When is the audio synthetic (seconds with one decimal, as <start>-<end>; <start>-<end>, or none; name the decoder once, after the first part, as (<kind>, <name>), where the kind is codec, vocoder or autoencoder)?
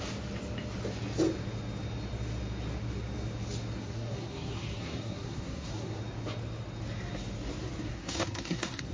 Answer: 3.8-6.0 (codec, SNAC); 7.9-8.9